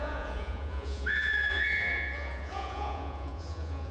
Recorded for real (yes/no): no